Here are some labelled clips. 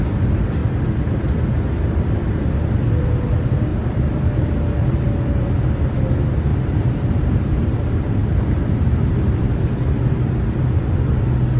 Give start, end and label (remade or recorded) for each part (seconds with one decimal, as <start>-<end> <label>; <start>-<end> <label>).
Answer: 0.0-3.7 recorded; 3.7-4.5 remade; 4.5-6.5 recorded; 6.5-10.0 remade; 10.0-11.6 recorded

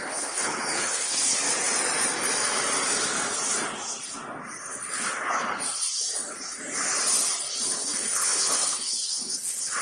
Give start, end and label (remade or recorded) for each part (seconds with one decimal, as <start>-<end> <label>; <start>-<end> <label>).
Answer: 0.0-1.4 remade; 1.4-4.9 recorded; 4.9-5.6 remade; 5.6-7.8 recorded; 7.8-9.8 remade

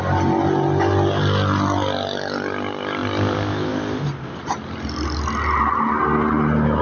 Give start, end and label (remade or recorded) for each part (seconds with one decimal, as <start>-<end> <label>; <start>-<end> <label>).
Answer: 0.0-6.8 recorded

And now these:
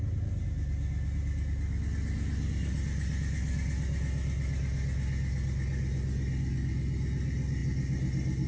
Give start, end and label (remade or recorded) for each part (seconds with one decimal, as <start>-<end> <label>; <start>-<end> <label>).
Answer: 0.0-8.5 recorded

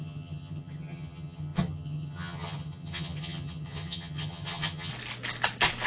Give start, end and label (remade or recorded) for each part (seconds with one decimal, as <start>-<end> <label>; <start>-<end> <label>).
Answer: 0.0-4.9 remade; 4.9-5.9 recorded